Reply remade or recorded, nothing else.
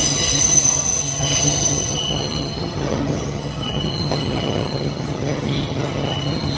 remade